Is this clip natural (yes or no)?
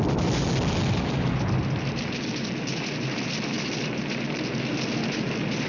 yes